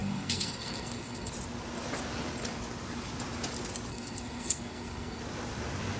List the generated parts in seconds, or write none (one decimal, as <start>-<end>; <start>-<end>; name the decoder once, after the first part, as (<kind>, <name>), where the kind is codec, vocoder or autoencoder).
0.0-1.3 (codec, SNAC); 3.9-5.2